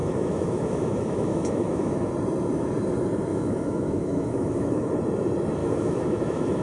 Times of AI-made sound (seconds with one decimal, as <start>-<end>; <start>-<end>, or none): 0.0-2.1; 3.3-4.9; 5.6-6.6